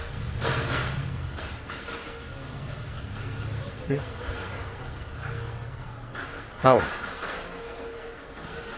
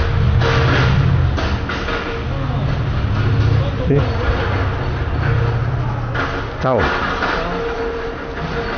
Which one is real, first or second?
second